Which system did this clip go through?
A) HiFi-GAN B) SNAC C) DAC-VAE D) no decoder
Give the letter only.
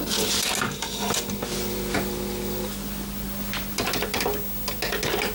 D